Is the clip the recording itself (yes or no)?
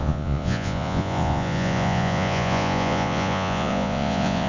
no